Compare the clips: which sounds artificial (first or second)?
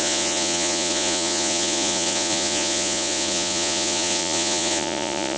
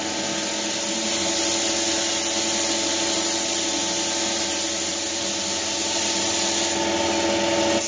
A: first